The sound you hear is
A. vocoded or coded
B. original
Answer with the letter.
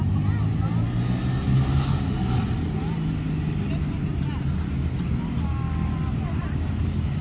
B